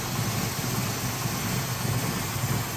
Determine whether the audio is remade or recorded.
recorded